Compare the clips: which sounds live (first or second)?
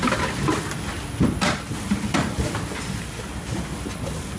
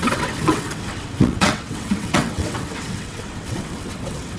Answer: first